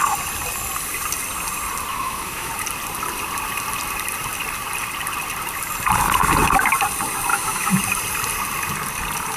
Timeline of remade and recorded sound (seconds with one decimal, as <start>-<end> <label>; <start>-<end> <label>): 0.0-1.9 recorded; 1.9-2.5 remade; 2.5-7.3 recorded; 7.3-7.8 remade; 7.8-9.4 recorded